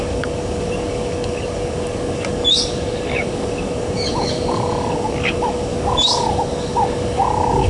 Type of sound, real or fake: fake